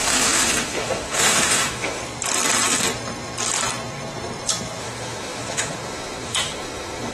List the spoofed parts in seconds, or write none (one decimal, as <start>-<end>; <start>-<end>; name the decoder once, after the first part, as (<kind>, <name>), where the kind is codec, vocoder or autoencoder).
0.0-2.0 (autoencoder, DAC-VAE); 4.8-7.1